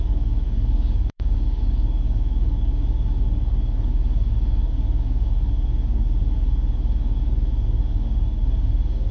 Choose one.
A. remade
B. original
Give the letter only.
A